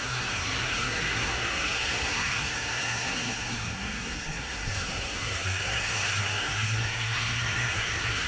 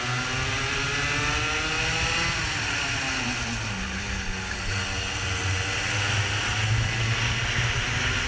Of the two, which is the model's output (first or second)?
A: first